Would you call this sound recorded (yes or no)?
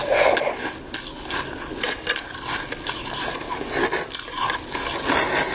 yes